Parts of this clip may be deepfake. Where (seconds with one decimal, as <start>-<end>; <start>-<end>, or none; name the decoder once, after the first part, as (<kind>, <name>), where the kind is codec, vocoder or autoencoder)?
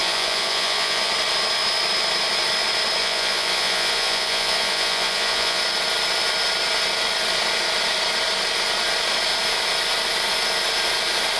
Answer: 0.0-1.1 (vocoder, Vocos); 3.0-5.6